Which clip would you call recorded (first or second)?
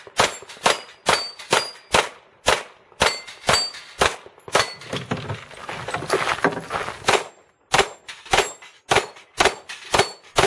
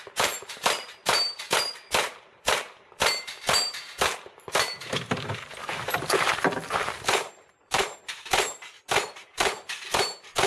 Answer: first